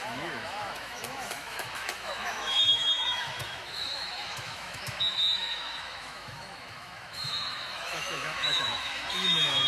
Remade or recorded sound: remade